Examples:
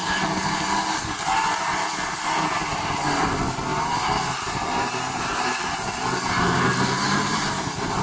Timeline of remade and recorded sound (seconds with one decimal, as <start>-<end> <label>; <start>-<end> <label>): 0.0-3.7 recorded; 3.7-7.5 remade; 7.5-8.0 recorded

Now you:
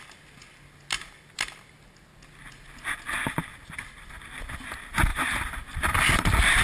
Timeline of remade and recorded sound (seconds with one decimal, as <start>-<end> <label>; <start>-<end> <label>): 0.0-5.1 recorded; 5.1-6.6 remade

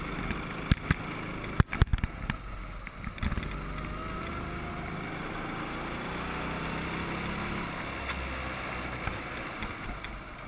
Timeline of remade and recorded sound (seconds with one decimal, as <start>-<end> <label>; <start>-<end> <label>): 0.0-10.5 recorded